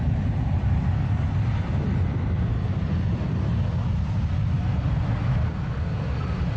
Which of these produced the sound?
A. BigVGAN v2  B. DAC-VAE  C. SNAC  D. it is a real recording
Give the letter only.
D